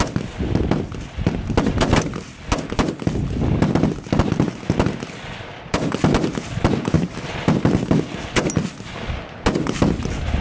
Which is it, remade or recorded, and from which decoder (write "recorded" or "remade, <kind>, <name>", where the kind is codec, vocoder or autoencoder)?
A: recorded